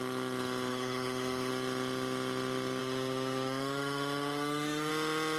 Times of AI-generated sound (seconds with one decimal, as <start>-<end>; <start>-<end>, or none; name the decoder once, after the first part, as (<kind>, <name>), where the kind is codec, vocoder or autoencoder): 0.7-1.5 (autoencoder, DAC-VAE); 2.8-4.9